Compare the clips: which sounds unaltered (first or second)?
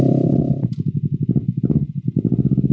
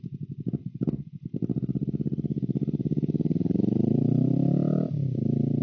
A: first